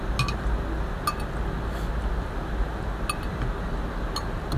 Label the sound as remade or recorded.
recorded